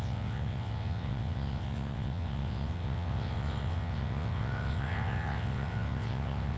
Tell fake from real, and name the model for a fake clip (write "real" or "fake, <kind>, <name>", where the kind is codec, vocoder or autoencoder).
fake, vocoder, WaveNeXt